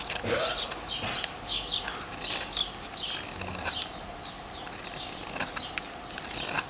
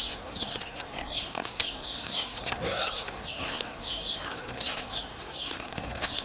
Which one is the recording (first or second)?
first